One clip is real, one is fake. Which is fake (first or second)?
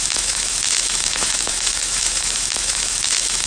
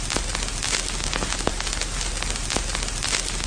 first